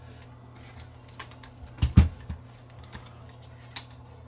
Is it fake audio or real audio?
real